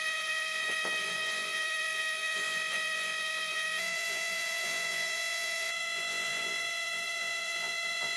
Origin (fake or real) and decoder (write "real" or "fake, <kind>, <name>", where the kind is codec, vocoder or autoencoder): fake, vocoder, Vocos